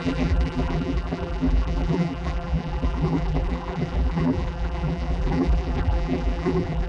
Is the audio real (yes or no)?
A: no